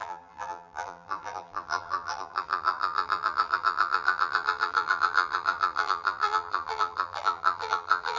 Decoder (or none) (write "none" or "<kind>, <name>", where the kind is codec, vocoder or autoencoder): vocoder, BigVGAN v2